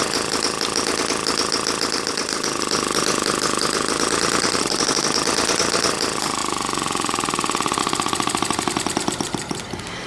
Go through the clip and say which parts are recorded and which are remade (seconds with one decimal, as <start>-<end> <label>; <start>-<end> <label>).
0.0-10.1 recorded